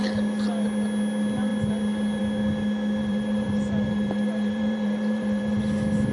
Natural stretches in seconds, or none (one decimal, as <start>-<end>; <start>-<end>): 0.0-3.0; 5.6-6.1